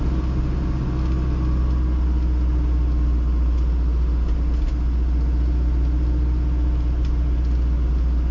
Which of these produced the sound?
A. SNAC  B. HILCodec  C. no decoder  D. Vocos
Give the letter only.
C